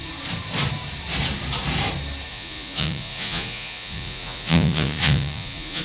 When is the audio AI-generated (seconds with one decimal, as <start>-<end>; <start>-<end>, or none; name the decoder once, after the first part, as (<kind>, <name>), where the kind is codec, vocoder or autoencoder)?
2.3-5.8 (vocoder, Vocos)